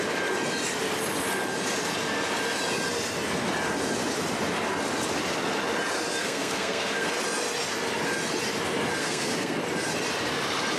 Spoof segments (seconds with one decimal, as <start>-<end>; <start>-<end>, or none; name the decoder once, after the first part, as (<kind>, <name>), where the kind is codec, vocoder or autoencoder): 6.2-7.1 (codec, SNAC); 9.0-9.6